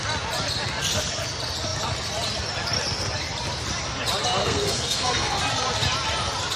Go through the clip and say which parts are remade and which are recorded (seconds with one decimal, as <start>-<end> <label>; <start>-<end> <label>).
0.0-4.4 recorded; 4.4-5.4 remade; 5.4-6.6 recorded